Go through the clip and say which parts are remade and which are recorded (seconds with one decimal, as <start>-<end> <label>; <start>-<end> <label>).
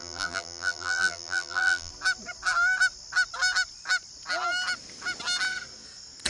0.0-1.9 remade; 1.9-6.3 recorded